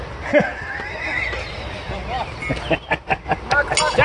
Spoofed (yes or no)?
no